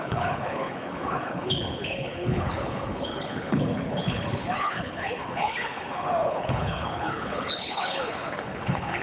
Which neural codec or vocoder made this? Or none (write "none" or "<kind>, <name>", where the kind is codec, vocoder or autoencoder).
codec, HILCodec